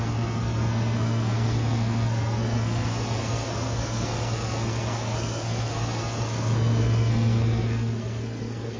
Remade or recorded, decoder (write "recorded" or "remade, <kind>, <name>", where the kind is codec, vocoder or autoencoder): remade, codec, SNAC